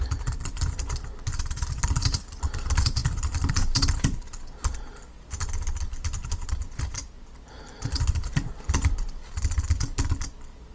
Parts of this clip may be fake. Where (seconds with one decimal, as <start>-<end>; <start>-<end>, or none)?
none